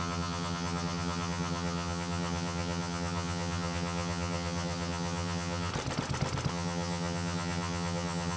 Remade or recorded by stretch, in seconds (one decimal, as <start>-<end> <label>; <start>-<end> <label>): 0.0-5.7 remade; 5.7-6.5 recorded; 6.5-8.4 remade